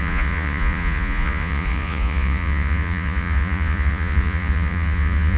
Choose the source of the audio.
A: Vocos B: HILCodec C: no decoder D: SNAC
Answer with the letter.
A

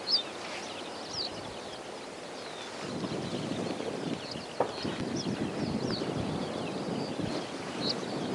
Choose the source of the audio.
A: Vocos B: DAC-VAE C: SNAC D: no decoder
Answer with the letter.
D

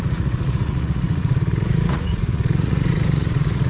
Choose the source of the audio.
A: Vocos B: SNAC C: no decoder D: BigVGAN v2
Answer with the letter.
A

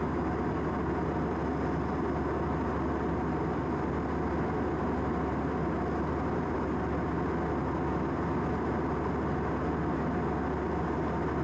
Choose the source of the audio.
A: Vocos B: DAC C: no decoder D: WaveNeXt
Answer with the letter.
C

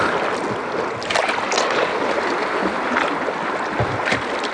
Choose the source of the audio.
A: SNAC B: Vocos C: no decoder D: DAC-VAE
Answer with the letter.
C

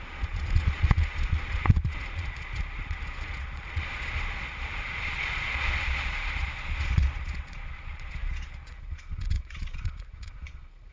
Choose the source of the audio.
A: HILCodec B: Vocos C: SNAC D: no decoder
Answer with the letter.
B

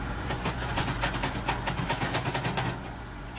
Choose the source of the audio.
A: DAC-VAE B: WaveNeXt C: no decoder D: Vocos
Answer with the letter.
D